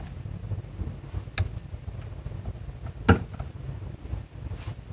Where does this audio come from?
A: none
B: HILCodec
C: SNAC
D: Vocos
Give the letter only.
A